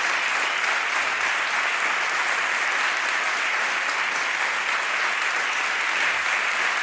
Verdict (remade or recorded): recorded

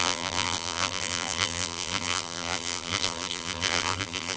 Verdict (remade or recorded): remade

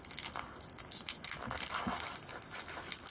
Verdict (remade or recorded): recorded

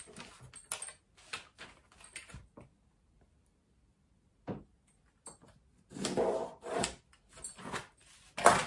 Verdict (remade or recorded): recorded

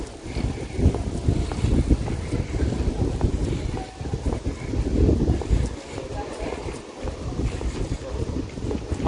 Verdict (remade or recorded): recorded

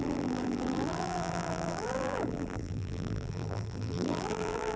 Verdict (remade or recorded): remade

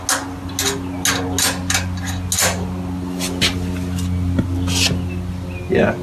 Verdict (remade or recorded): recorded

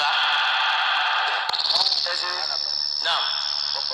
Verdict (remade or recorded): recorded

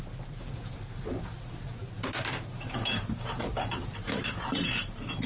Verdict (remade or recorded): remade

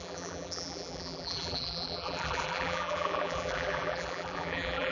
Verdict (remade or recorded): remade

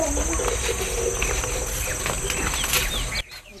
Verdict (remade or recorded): recorded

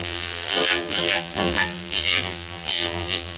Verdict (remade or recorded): remade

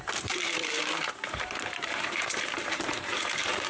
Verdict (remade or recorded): remade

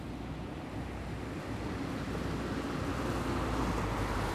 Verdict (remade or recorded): recorded